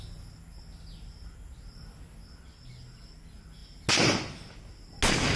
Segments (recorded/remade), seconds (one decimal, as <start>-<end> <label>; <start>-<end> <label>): 0.0-5.4 recorded